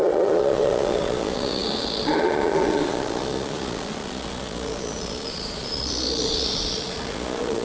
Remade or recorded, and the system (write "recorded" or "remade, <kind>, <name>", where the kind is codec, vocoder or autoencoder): remade, vocoder, Vocos